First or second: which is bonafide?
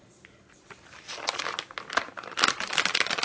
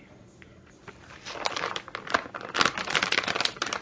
second